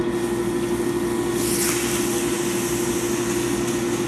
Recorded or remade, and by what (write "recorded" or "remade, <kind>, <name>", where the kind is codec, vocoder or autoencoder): recorded